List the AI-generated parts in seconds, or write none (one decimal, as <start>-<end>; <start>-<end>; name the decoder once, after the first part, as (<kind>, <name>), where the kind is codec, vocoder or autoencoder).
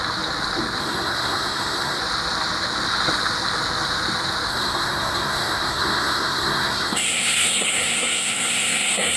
0.8-2.0 (codec, SNAC); 4.5-9.2